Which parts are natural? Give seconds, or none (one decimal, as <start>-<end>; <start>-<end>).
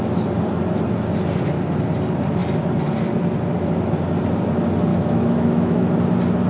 0.0-4.9; 5.9-6.5